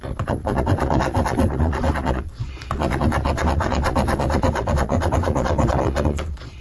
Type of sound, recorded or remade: remade